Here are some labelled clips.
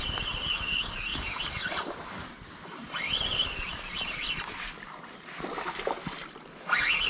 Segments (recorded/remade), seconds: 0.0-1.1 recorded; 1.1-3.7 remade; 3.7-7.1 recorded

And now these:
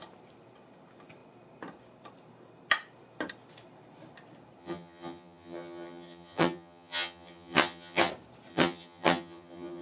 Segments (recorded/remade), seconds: 0.0-4.6 recorded; 4.6-8.1 remade; 8.1-8.5 recorded; 8.5-9.8 remade